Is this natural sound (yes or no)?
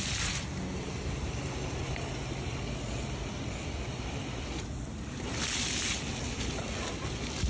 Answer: yes